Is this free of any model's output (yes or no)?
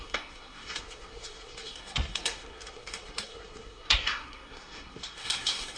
no